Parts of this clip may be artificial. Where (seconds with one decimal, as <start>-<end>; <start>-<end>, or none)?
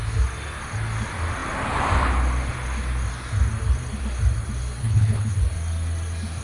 4.8-5.3